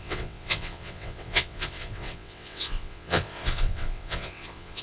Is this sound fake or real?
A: fake